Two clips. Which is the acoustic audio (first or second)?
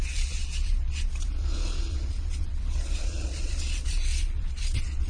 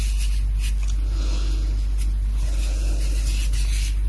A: second